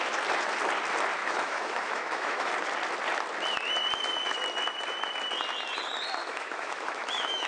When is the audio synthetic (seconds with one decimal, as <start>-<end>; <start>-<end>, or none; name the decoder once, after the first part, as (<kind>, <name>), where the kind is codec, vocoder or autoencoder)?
1.2-2.5 (autoencoder, DAC-VAE); 6.2-7.5